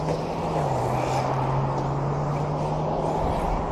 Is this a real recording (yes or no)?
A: yes